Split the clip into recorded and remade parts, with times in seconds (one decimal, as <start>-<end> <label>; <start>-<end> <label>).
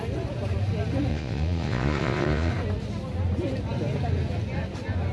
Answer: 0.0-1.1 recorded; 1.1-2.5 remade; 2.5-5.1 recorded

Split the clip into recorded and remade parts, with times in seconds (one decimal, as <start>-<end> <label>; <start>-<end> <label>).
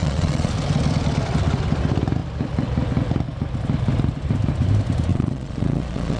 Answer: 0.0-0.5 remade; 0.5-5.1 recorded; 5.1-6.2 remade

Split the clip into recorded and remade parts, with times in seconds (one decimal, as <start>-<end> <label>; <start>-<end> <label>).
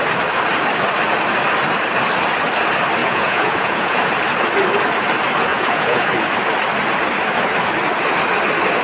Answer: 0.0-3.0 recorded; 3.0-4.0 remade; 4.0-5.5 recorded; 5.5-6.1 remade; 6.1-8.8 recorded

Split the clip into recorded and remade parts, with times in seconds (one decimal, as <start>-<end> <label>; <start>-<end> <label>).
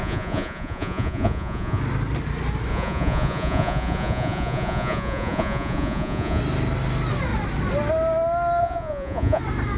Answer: 0.0-1.8 remade; 1.8-2.7 recorded; 2.7-6.4 remade; 6.4-8.6 recorded; 8.6-9.4 remade; 9.4-9.8 recorded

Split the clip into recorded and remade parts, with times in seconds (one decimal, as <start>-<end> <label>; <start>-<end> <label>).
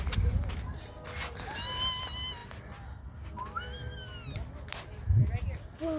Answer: 0.0-6.0 recorded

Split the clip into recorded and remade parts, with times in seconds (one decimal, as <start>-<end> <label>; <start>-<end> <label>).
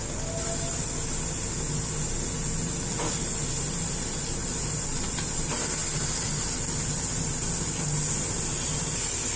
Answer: 0.0-9.4 recorded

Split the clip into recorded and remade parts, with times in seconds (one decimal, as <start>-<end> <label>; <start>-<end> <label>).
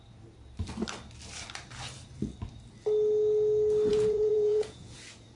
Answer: 0.0-3.9 recorded; 3.9-5.0 remade; 5.0-5.4 recorded